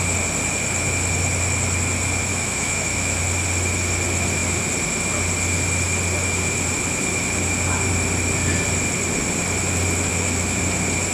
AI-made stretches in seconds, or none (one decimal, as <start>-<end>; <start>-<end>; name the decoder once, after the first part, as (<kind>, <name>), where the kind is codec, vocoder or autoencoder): 2.3-3.2 (autoencoder, DAC-VAE); 10.1-10.6